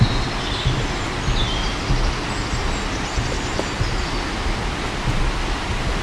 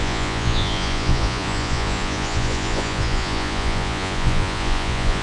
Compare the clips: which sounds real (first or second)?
first